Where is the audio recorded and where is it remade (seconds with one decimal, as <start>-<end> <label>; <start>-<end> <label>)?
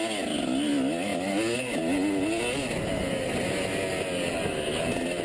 0.0-5.2 recorded